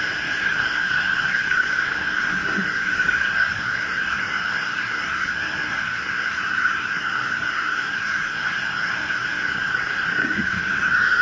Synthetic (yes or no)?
yes